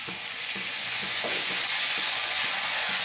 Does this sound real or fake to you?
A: fake